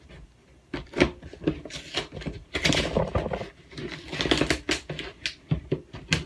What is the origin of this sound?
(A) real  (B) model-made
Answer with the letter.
A